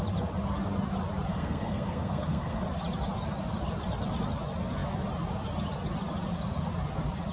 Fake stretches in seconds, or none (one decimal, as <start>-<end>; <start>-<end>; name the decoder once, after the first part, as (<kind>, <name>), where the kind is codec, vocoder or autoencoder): 1.3-2.6 (codec, SNAC)